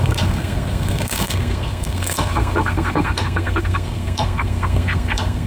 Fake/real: fake